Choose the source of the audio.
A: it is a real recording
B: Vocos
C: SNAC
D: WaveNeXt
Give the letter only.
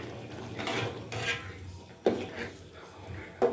A